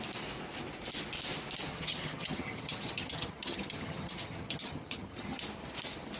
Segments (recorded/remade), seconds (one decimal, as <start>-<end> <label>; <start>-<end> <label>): 0.0-1.7 recorded; 1.7-5.4 remade; 5.4-6.2 recorded